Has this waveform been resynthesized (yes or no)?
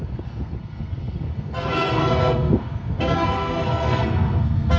yes